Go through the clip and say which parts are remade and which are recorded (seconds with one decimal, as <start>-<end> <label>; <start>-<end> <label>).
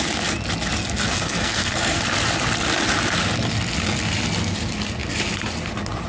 0.0-0.9 recorded; 0.9-2.0 remade; 2.0-6.1 recorded